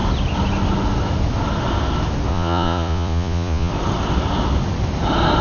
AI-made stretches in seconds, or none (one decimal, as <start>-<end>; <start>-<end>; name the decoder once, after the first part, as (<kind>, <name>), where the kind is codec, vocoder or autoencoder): 2.3-3.7 (vocoder, Vocos)